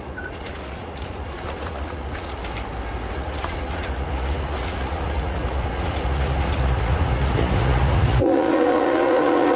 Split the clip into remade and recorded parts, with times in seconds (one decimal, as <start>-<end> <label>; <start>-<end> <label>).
0.0-2.4 remade; 2.4-3.1 recorded; 3.1-9.6 remade